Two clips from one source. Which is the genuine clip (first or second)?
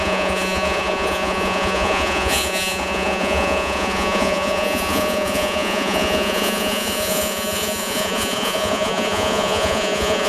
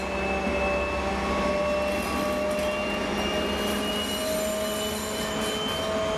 second